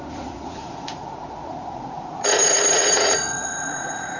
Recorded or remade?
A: remade